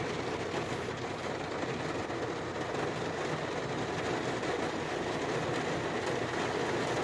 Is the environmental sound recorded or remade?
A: recorded